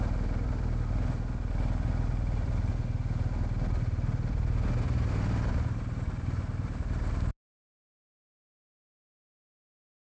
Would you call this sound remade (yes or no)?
no